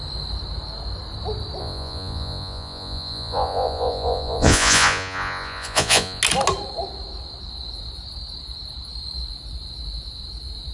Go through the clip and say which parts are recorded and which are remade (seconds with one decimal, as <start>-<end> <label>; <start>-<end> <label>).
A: 0.0-1.6 recorded; 1.6-6.2 remade; 6.2-10.7 recorded